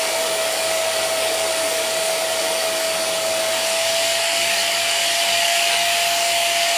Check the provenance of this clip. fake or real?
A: fake